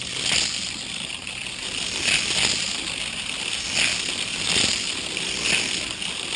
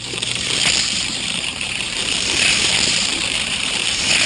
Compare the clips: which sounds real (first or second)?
first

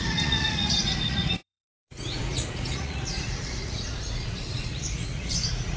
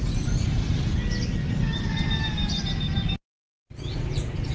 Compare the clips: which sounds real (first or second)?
second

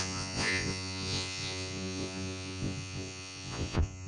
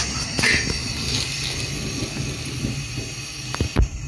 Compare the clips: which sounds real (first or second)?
second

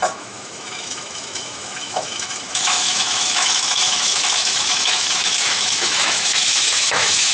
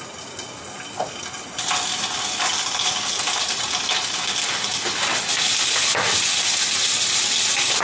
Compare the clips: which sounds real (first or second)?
second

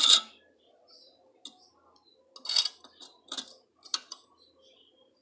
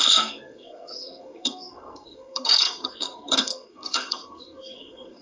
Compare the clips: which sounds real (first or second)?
first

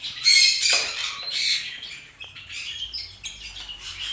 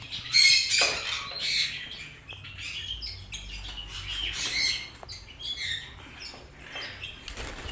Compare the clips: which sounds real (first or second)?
second